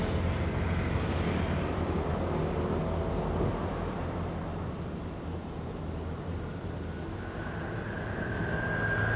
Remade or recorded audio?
recorded